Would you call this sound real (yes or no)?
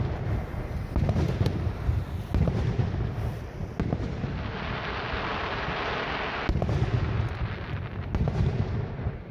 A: yes